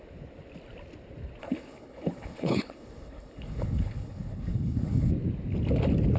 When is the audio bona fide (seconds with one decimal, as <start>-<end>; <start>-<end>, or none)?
0.0-1.4; 5.1-6.2